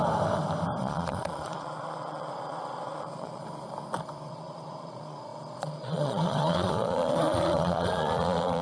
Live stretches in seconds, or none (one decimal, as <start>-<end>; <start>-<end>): 0.0-0.8; 3.4-4.3